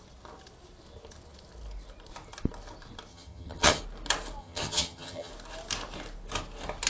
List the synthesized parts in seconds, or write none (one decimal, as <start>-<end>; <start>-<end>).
3.1-3.8; 4.4-5.3